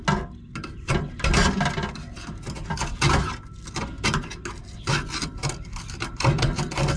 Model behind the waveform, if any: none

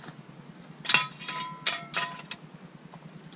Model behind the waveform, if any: none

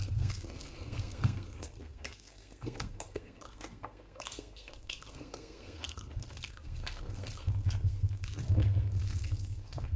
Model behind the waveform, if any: codec, SNAC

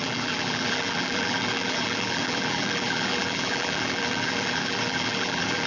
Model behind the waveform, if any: vocoder, BigVGAN v2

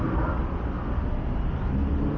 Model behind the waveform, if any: none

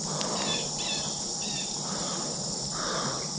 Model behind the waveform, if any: none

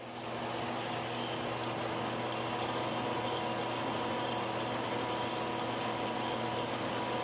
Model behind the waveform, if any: none